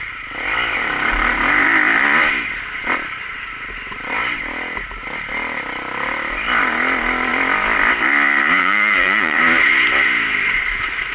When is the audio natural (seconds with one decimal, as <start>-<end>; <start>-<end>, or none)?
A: 0.0-8.6; 9.4-11.1

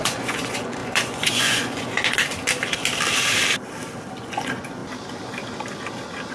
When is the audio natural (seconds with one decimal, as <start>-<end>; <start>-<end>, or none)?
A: 2.2-4.2; 4.8-6.3

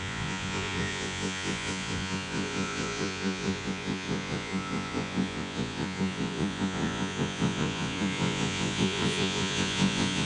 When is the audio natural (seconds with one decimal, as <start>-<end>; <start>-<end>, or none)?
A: none

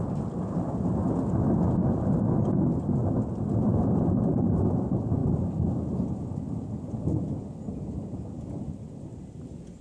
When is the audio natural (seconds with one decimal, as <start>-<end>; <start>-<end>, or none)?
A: 0.0-9.8

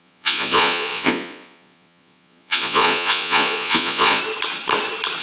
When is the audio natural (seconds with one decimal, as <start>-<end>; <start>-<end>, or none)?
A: 4.2-5.2